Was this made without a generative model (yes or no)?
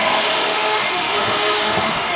no